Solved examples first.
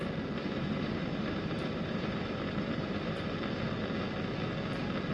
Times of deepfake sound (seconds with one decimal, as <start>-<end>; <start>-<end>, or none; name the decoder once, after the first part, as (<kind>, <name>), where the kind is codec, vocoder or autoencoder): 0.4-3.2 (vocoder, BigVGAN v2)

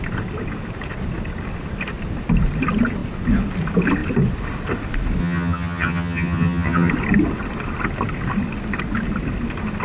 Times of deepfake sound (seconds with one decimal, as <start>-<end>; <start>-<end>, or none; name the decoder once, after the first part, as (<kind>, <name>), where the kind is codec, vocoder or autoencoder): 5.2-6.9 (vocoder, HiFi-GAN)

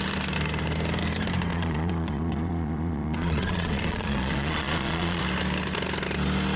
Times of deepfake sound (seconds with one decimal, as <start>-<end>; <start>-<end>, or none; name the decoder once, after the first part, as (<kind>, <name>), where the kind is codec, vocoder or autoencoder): 1.5-5.2 (vocoder, Vocos)

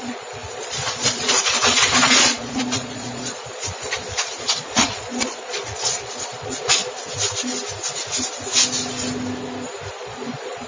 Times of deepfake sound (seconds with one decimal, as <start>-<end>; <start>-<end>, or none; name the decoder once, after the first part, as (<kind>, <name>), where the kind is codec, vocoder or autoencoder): 0.0-6.8 (vocoder, Vocos); 9.9-10.7

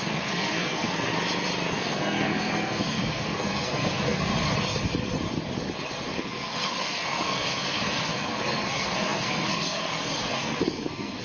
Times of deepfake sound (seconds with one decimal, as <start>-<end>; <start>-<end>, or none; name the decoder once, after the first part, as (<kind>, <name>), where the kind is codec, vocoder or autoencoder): 0.0-1.1 (codec, SNAC); 1.7-4.3; 6.2-11.2

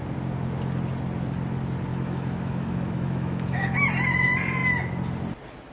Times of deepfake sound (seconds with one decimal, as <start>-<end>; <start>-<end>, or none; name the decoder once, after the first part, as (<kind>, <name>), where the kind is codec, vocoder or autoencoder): 1.9-3.8 (autoencoder, DAC-VAE)

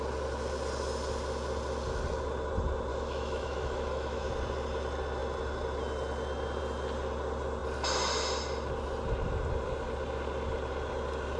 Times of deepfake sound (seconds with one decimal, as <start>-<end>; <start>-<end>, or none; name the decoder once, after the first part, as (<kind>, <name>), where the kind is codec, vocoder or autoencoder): 2.9-4.3 (autoencoder, DAC-VAE)

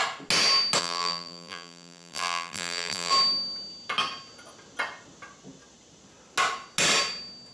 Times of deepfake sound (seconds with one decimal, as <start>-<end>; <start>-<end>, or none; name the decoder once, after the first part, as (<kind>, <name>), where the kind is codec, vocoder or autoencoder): 0.8-3.1 (vocoder, BigVGAN v2)